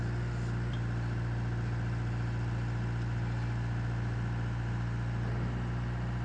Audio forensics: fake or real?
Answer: real